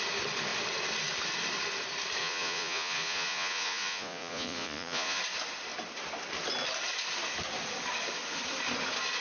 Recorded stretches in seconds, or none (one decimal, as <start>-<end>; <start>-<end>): 0.0-2.2; 5.2-9.2